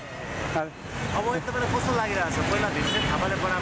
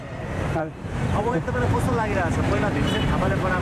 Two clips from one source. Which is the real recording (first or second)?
first